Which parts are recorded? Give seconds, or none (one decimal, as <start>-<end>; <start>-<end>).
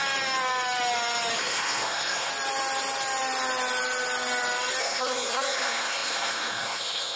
0.0-1.4; 2.3-4.8